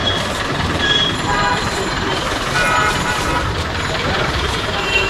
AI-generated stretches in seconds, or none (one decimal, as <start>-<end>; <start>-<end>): 0.0-5.1